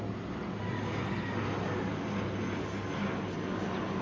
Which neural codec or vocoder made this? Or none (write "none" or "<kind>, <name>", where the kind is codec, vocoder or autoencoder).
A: none